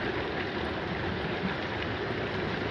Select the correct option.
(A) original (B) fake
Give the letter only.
A